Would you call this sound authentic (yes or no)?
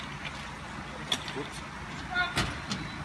yes